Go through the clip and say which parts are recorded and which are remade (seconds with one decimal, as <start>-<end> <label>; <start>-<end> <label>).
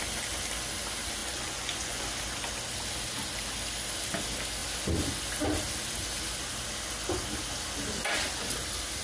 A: 0.0-1.2 recorded; 1.2-2.0 remade; 2.0-9.0 recorded